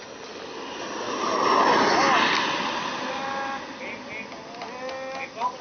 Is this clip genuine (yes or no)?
yes